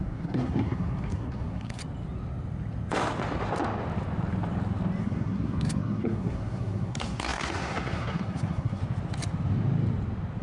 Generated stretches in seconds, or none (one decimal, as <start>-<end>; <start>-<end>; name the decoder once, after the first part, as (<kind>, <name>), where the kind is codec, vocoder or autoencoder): 0.0-1.8 (codec, SNAC); 5.0-8.8